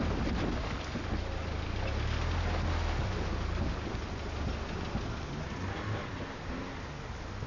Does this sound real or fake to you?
real